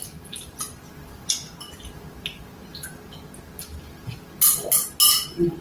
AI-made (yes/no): no